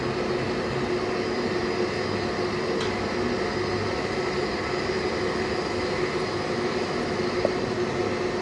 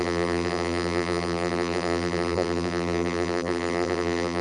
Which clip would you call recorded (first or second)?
first